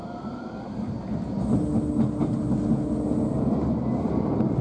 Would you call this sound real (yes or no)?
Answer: yes